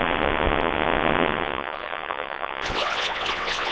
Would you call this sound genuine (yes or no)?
no